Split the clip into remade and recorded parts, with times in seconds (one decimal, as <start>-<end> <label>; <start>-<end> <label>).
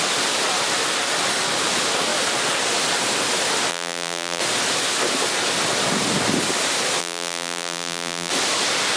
0.0-3.7 recorded; 3.7-4.4 remade; 4.4-7.0 recorded; 7.0-8.3 remade; 8.3-9.0 recorded